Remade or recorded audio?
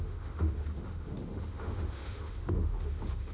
remade